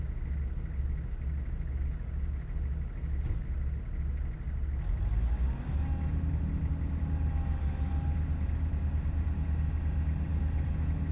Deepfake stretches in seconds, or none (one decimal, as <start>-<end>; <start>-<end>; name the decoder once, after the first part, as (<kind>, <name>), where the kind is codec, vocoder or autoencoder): none